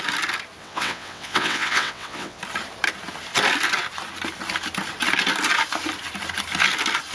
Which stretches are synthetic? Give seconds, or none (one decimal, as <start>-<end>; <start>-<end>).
0.6-2.4